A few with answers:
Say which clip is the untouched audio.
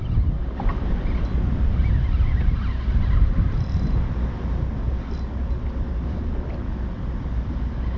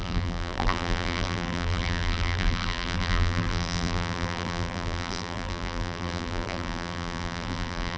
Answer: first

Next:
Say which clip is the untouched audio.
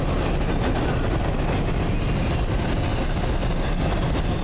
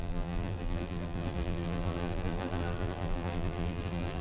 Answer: first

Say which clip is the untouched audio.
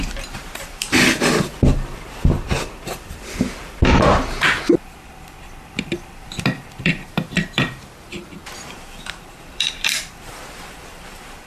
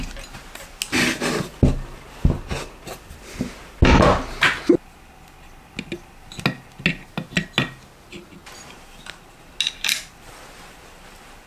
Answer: second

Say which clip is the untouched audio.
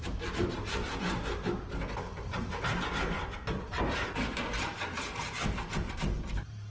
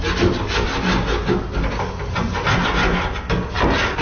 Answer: second